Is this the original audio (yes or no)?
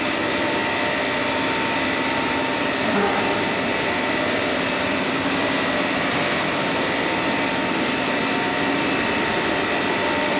no